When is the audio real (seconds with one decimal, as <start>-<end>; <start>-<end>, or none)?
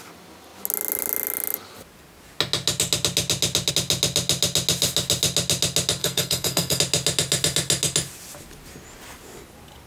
0.0-6.0; 6.8-9.9